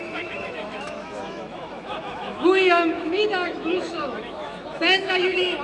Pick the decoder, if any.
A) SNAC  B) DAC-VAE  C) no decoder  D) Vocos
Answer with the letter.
B